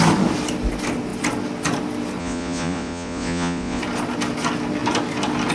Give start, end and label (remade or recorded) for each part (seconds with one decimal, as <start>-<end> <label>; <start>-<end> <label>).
0.0-2.2 recorded; 2.2-3.8 remade; 3.8-5.5 recorded